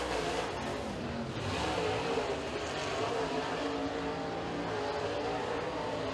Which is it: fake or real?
real